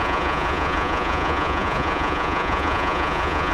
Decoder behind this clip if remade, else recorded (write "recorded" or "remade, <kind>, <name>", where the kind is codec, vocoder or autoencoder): remade, vocoder, Vocos